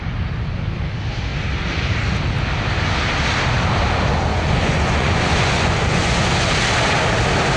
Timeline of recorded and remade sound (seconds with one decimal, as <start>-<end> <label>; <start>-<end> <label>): 0.0-4.3 recorded; 4.3-6.6 remade; 6.6-7.6 recorded